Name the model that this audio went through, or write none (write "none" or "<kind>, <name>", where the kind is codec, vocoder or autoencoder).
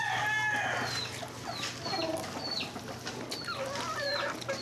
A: none